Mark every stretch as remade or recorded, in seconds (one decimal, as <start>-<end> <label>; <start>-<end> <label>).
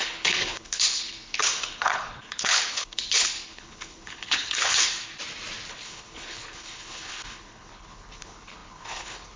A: 0.0-5.1 remade; 5.1-5.7 recorded; 5.7-9.4 remade